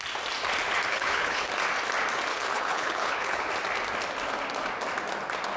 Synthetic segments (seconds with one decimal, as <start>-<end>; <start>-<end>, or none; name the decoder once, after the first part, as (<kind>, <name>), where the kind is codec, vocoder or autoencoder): 0.9-1.5 (codec, HILCodec); 2.3-3.5